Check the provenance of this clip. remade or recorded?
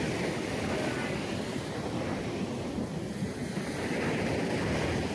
recorded